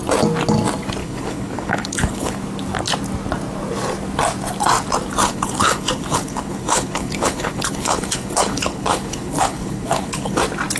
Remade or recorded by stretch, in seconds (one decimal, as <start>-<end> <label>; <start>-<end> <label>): 0.0-1.0 recorded; 1.0-2.4 remade; 2.4-5.2 recorded; 5.2-10.4 remade; 10.4-10.8 recorded